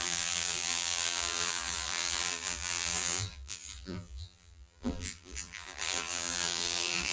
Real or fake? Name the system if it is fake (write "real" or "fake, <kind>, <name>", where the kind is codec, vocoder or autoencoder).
fake, vocoder, BigVGAN v2